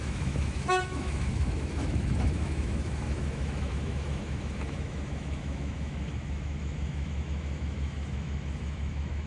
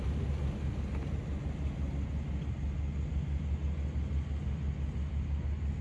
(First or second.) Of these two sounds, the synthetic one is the first